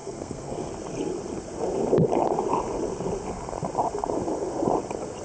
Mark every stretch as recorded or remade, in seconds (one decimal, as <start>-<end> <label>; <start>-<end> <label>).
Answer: 0.0-0.7 remade; 0.7-5.2 recorded